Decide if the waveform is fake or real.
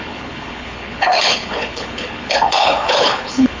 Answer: fake